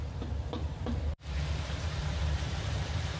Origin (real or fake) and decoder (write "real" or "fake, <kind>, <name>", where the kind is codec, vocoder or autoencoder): fake, vocoder, BigVGAN v2